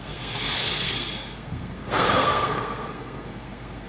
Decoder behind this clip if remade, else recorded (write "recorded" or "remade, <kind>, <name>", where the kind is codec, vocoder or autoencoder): remade, codec, SNAC